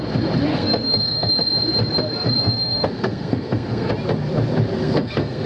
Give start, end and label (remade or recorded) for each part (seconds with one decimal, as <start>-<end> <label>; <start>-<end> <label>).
0.0-0.5 recorded; 0.5-1.3 remade; 1.3-2.4 recorded; 2.4-3.9 remade; 3.9-4.8 recorded; 4.8-5.5 remade